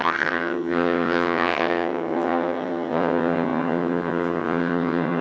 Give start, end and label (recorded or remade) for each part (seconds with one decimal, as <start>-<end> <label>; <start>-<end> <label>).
0.0-5.2 remade